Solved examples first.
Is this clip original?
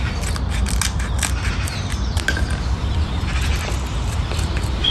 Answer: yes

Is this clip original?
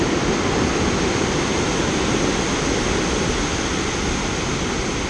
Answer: yes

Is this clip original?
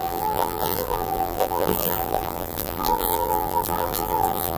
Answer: no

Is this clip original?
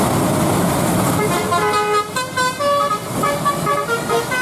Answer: yes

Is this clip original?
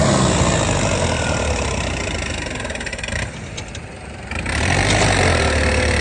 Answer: no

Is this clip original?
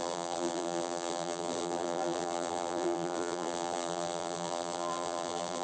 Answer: no